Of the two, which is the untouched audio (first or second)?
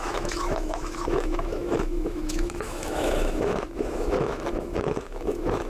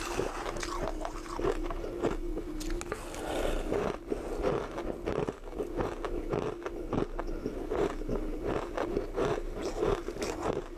second